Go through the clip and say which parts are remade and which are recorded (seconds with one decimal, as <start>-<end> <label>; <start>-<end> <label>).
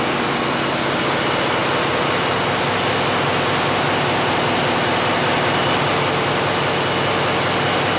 0.0-8.0 recorded